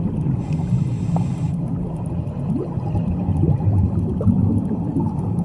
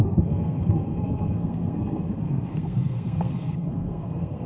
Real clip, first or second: first